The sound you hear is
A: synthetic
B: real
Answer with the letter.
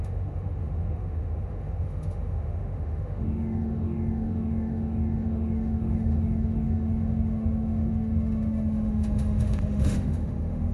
A